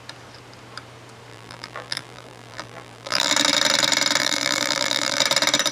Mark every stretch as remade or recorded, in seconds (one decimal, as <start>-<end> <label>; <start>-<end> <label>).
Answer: 0.0-1.3 recorded; 1.3-3.3 remade; 3.3-4.2 recorded; 4.2-5.2 remade; 5.2-5.7 recorded